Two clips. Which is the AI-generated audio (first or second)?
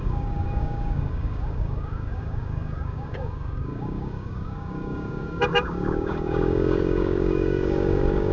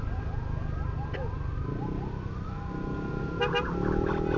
first